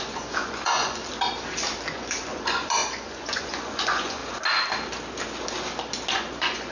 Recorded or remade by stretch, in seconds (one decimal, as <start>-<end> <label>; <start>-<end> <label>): 0.0-1.0 remade; 1.0-1.9 recorded; 1.9-4.2 remade; 4.2-6.1 recorded; 6.1-6.7 remade

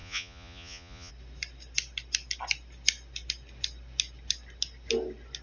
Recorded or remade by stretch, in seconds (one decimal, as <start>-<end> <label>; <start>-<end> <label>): 0.0-1.1 remade; 1.1-5.4 recorded

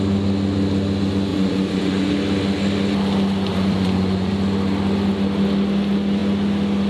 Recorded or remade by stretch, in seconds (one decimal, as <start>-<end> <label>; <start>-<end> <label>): 0.0-1.3 recorded; 1.3-2.1 remade; 2.1-3.5 recorded; 3.5-4.3 remade; 4.3-6.9 recorded

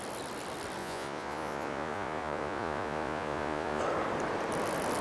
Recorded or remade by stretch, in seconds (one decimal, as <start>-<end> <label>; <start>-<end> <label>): 0.0-0.8 recorded; 0.8-3.8 remade; 3.8-5.0 recorded

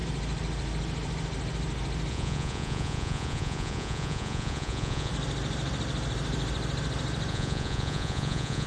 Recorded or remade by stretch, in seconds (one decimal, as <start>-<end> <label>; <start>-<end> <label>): 0.0-2.1 recorded; 2.1-5.1 remade; 5.1-7.3 recorded; 7.3-8.7 remade

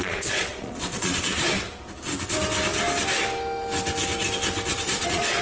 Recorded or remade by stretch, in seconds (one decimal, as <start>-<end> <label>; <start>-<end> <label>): 0.0-1.5 remade; 1.5-4.7 recorded; 4.7-5.4 remade

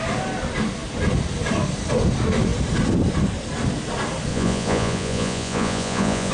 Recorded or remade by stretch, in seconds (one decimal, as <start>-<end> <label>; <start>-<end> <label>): 0.0-4.3 recorded; 4.3-6.3 remade

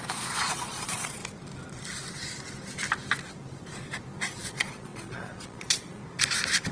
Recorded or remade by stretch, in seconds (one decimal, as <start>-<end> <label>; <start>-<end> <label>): 0.0-1.2 remade; 1.2-4.4 recorded; 4.4-6.0 remade; 6.0-6.7 recorded